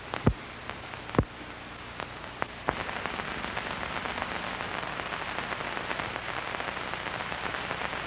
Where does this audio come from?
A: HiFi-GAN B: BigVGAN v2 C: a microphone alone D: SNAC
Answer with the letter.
C